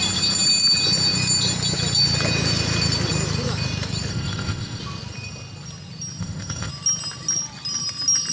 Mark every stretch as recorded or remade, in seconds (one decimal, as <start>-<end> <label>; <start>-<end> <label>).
0.0-4.1 recorded; 4.1-4.8 remade; 4.8-6.2 recorded; 6.2-6.7 remade; 6.7-8.3 recorded